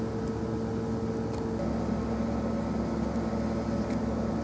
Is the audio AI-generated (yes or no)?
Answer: no